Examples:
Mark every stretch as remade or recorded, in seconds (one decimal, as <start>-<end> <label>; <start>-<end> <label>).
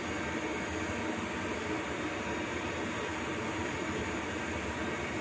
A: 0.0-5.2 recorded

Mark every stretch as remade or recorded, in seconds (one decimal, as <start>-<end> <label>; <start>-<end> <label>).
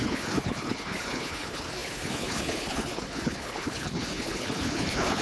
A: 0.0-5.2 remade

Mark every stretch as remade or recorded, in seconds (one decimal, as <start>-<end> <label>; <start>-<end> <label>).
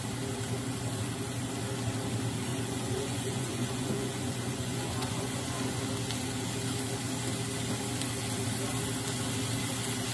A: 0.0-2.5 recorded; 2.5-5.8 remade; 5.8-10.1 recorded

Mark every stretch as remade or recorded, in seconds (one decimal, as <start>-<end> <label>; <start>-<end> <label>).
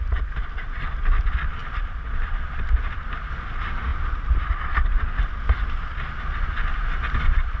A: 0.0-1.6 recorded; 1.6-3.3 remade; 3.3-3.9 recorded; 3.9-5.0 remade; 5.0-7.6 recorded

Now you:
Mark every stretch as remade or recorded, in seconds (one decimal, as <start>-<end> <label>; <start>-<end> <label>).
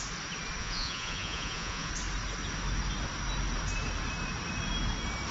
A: 0.0-0.6 recorded; 0.6-1.9 remade; 1.9-5.3 recorded